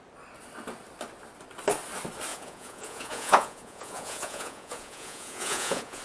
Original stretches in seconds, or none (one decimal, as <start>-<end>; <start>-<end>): 0.0-2.3